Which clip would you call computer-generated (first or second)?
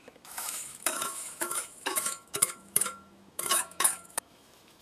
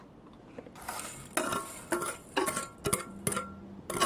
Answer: first